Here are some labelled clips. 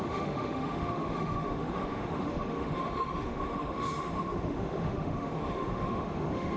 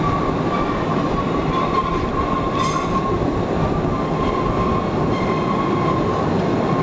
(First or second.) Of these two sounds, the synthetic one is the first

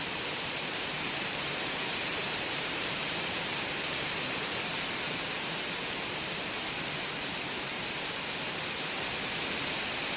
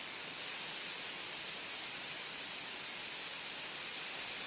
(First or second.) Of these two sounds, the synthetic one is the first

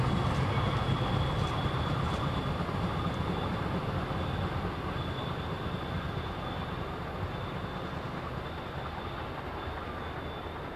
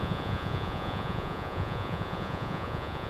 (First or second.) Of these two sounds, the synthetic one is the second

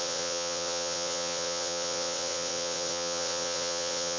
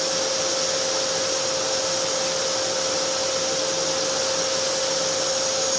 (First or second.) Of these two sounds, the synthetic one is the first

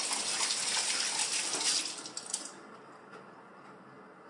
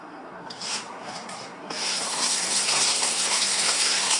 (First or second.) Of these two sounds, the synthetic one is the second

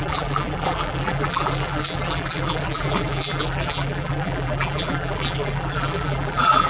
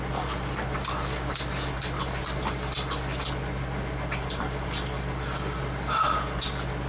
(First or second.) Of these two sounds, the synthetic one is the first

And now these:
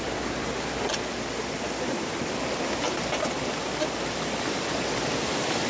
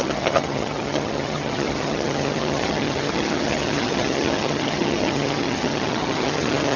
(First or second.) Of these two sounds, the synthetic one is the second